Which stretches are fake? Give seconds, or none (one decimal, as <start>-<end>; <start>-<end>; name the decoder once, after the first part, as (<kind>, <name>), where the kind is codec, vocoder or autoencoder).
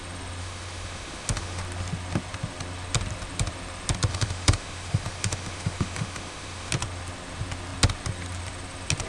0.4-1.6 (autoencoder, DAC-VAE); 4.1-6.7